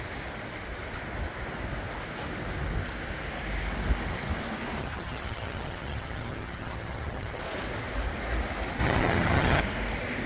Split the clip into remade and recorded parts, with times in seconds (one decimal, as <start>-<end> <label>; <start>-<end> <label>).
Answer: 0.0-4.8 recorded; 4.8-7.4 remade; 7.4-8.8 recorded; 8.8-9.6 remade; 9.6-10.3 recorded